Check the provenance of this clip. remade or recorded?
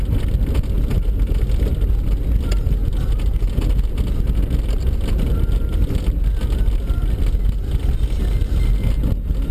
recorded